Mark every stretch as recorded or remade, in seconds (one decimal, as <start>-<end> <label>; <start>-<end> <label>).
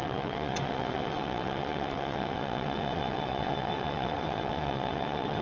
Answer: 0.0-5.4 remade